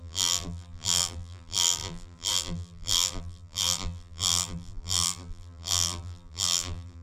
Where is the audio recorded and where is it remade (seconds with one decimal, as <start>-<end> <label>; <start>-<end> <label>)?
0.0-7.0 remade